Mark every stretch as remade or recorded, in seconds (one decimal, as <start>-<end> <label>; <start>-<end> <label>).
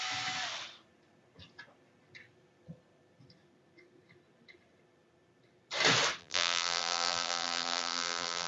0.0-6.2 recorded; 6.2-8.5 remade